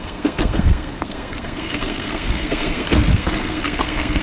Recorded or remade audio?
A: remade